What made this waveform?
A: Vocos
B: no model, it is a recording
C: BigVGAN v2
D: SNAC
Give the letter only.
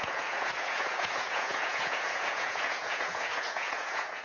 A